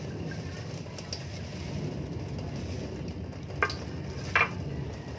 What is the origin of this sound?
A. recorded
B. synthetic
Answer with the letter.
A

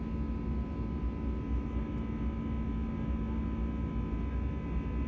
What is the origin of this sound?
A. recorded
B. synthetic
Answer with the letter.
A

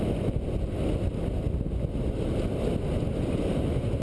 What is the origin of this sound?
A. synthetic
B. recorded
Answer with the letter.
B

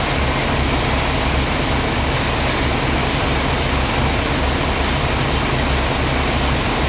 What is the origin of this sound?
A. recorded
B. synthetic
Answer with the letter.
A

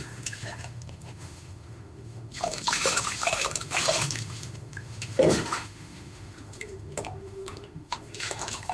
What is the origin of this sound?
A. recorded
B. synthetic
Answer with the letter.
B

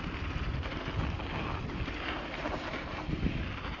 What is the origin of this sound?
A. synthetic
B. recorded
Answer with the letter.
B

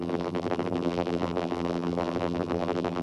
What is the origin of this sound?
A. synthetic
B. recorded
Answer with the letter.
A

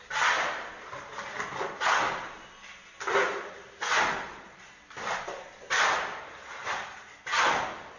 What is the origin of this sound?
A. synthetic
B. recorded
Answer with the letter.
B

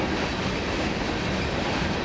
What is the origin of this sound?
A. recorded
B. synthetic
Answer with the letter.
A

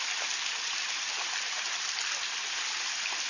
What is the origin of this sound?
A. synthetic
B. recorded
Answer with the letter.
B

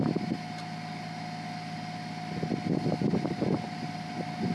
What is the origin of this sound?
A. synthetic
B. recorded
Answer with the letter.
B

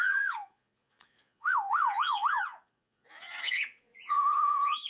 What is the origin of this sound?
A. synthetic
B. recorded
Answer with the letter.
A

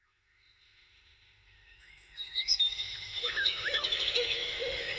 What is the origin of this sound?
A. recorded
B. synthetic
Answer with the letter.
B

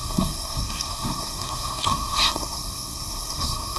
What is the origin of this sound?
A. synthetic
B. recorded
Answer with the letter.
A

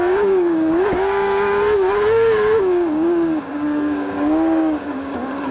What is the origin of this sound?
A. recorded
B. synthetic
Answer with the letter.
B